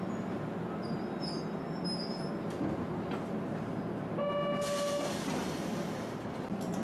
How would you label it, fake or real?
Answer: real